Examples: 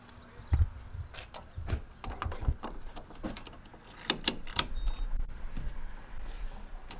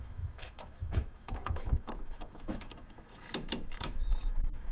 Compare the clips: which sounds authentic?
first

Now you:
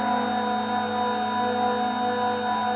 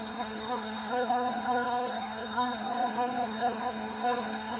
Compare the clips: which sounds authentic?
first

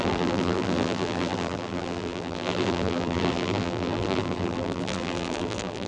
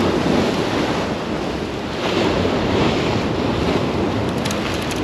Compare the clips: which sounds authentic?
second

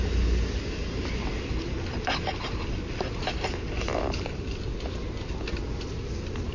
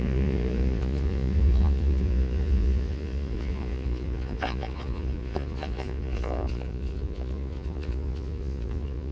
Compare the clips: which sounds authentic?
first